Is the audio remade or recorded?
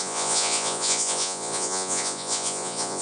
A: remade